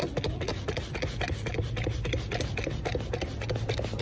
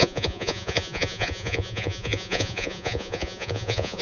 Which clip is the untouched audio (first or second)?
first